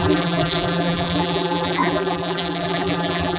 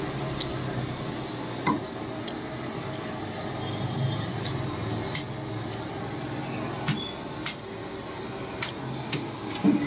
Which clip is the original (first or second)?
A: second